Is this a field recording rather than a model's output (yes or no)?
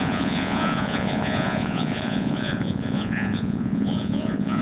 no